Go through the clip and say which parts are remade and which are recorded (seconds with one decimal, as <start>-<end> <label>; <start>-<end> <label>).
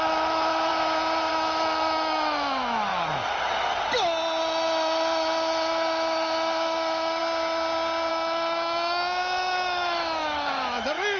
0.0-0.7 remade; 0.7-1.3 recorded; 1.3-2.9 remade; 2.9-4.4 recorded; 4.4-7.2 remade; 7.2-8.1 recorded; 8.1-11.2 remade